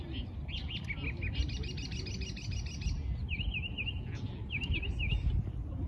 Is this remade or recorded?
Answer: recorded